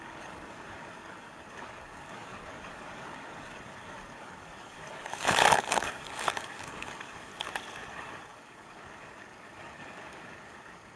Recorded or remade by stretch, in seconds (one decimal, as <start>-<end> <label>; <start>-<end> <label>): 0.0-7.3 remade; 7.3-7.9 recorded; 7.9-11.0 remade